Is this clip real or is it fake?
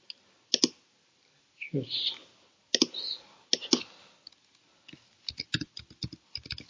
real